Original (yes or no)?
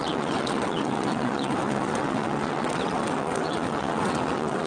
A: no